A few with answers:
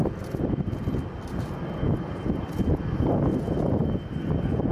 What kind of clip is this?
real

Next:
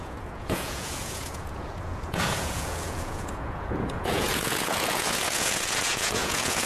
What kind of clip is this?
fake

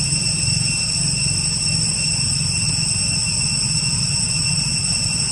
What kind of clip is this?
real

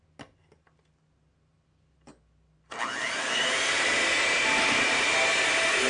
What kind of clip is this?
real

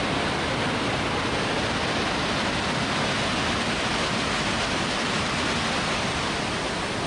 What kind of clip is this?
real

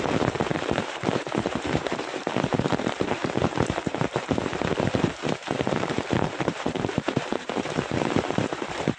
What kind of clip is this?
fake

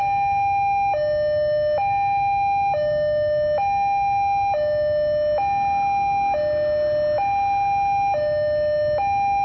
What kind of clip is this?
real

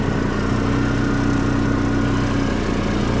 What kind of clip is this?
real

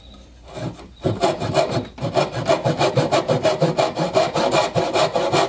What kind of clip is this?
real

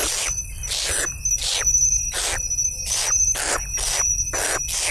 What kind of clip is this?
real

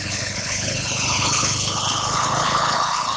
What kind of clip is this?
fake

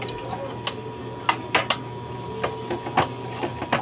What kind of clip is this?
real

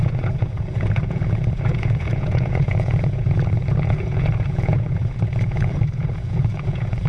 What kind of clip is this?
fake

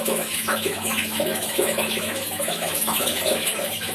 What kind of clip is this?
fake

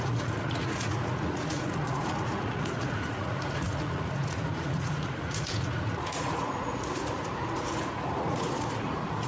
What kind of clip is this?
fake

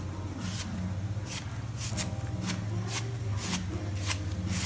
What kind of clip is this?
real